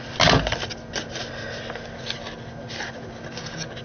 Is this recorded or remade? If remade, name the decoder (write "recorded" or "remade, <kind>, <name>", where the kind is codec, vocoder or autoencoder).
recorded